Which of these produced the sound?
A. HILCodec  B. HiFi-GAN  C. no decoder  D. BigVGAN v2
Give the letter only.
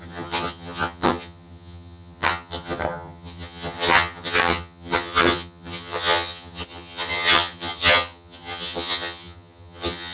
B